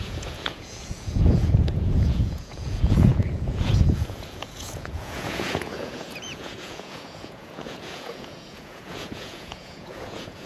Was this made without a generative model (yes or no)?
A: no